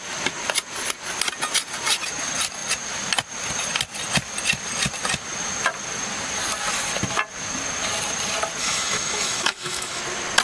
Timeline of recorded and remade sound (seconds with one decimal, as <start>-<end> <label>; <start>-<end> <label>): 0.0-8.6 recorded; 8.6-10.0 remade; 10.0-10.4 recorded